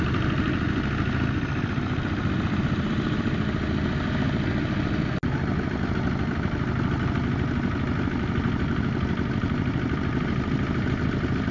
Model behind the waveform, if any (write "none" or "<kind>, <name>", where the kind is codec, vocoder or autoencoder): none